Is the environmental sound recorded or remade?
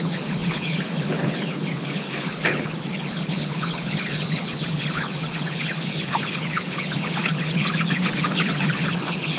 remade